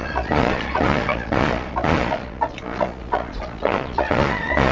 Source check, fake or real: fake